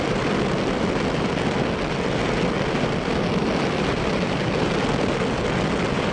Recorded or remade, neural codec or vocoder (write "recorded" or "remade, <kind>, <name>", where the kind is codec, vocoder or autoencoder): recorded